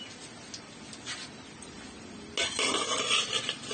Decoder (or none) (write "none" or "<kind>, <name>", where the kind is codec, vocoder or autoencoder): none